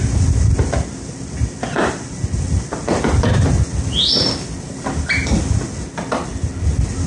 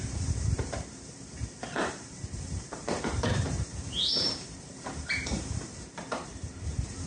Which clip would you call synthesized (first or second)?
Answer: second